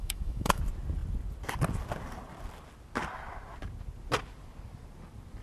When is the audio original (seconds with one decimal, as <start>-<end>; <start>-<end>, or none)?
0.6-5.4